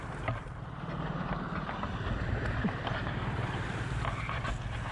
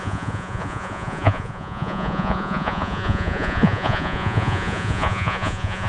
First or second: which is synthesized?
second